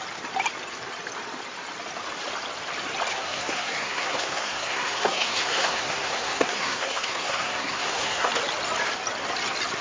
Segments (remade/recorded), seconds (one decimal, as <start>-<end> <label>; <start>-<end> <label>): 0.0-3.1 recorded; 3.1-8.3 remade; 8.3-9.8 recorded